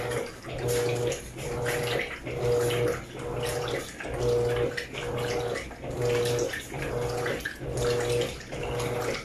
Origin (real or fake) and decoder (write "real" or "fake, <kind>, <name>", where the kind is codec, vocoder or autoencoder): real